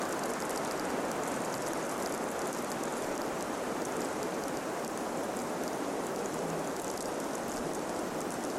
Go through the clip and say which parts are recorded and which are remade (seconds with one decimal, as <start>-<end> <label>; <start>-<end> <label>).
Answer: 0.0-2.9 recorded; 2.9-3.8 remade; 3.8-5.4 recorded; 5.4-6.7 remade; 6.7-8.6 recorded